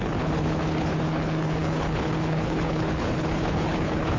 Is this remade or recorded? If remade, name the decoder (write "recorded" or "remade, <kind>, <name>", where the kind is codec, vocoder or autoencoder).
remade, codec, HILCodec